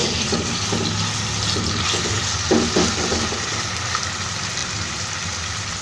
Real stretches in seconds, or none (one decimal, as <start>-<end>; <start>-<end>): 0.0-5.8